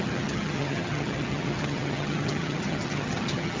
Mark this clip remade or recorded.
remade